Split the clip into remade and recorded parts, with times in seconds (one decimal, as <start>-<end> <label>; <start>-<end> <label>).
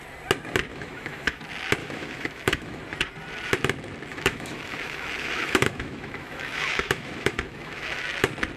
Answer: 0.0-0.7 recorded; 0.7-1.4 remade; 1.4-1.8 recorded; 1.8-2.8 remade; 2.8-4.1 recorded; 4.1-8.0 remade; 8.0-8.6 recorded